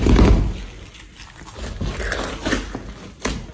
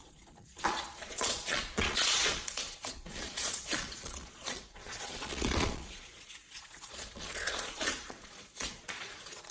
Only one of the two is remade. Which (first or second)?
second